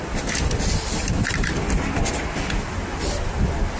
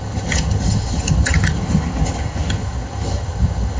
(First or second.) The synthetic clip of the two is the second